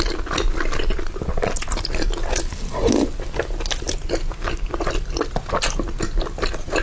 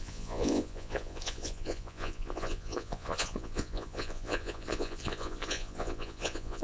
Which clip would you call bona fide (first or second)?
first